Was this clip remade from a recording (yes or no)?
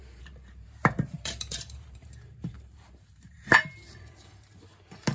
yes